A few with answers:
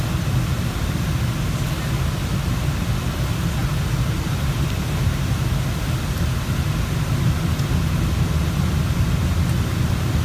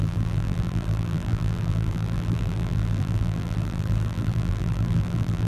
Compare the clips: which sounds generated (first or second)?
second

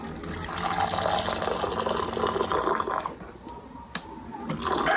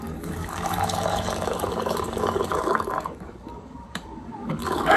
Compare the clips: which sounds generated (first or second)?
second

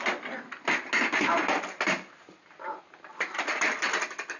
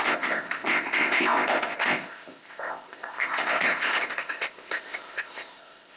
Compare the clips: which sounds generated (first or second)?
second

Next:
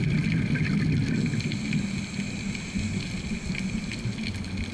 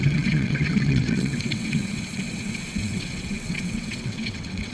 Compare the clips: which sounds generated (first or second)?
second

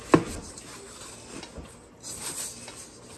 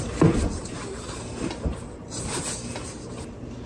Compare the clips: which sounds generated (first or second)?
second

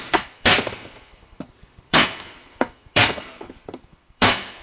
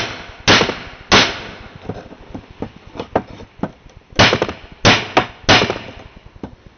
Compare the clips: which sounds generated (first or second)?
first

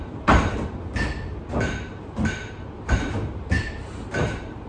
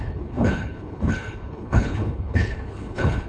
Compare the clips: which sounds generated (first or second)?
second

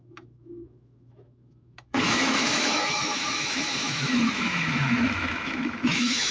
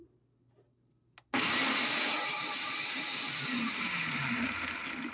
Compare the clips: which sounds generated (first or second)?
first